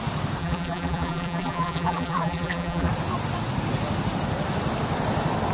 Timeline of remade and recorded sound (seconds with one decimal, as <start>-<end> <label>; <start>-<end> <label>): 0.0-0.4 recorded; 0.4-2.9 remade; 2.9-5.5 recorded